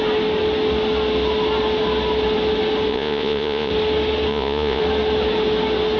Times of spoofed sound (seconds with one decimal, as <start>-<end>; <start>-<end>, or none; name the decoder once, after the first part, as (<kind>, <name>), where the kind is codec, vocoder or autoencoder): 2.9-3.7 (vocoder, Vocos); 4.3-4.8